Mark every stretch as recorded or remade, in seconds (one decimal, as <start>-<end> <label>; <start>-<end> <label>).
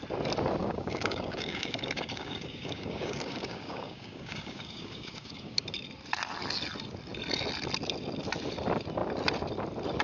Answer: 0.0-0.6 recorded; 0.6-5.6 remade; 5.6-10.0 recorded